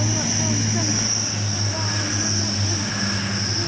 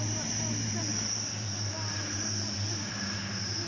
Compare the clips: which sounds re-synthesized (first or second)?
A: second